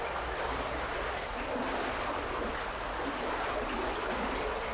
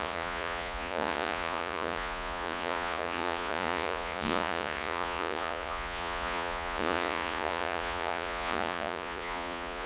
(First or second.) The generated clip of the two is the second